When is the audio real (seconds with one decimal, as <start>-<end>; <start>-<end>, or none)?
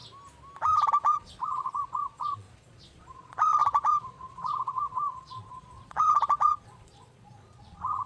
0.0-0.9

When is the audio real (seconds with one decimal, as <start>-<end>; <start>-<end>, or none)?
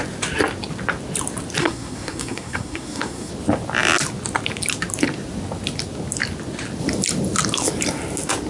0.0-1.6; 3.3-8.5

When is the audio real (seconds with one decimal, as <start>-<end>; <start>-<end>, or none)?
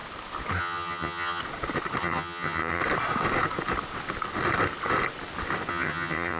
0.0-0.6; 1.4-2.0; 2.8-5.7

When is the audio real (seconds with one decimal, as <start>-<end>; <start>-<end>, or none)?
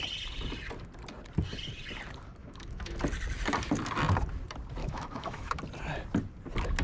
0.0-2.4; 3.0-4.8; 5.6-6.8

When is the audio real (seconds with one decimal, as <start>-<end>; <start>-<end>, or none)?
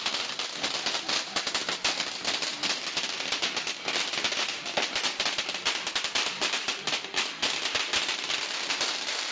6.7-7.7